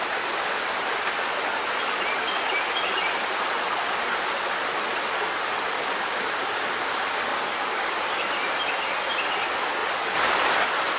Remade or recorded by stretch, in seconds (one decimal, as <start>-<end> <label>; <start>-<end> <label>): 0.0-7.3 recorded; 7.3-7.9 remade; 7.9-11.0 recorded